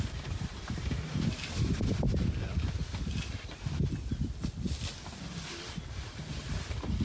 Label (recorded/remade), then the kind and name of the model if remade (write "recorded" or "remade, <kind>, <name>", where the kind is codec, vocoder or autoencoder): recorded